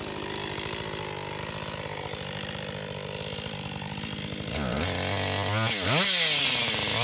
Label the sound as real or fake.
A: real